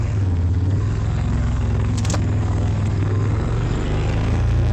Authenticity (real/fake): fake